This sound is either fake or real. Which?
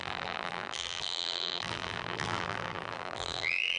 fake